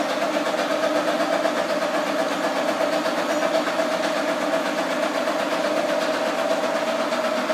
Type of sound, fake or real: real